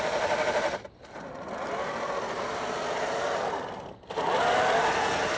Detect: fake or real real